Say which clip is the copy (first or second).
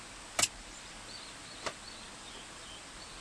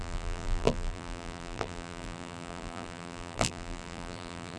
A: second